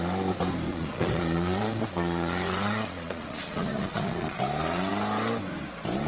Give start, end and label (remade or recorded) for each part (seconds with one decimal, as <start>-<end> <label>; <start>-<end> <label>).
0.0-0.7 recorded; 0.7-4.4 remade; 4.4-6.1 recorded